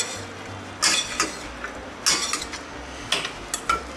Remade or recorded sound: recorded